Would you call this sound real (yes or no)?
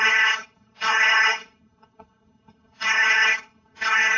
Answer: no